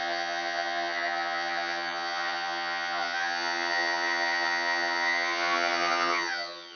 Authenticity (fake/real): fake